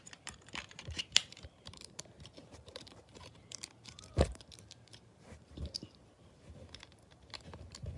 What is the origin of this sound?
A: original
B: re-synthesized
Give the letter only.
B